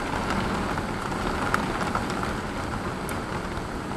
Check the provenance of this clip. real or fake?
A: real